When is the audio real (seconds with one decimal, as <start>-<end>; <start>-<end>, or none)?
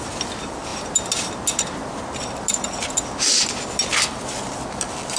0.0-5.2